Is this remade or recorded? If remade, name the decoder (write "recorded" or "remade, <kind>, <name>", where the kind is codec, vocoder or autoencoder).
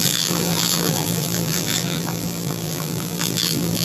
remade, vocoder, BigVGAN v2